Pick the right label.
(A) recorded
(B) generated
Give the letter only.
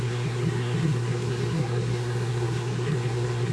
B